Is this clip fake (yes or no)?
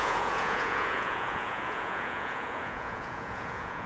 yes